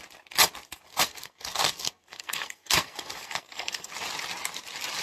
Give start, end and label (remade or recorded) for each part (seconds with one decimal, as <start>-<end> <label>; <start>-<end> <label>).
0.0-0.9 recorded; 0.9-3.9 remade; 3.9-5.0 recorded

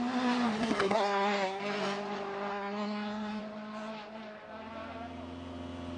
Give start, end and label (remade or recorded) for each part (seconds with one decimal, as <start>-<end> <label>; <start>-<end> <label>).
0.0-0.6 recorded; 0.6-1.6 remade; 1.6-2.5 recorded; 2.5-3.4 remade; 3.4-6.0 recorded

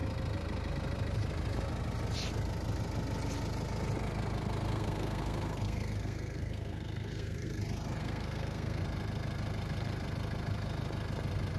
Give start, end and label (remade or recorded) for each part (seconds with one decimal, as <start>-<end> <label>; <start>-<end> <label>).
0.0-4.7 recorded; 4.7-7.6 remade; 7.6-8.0 recorded; 8.0-8.8 remade; 8.8-11.6 recorded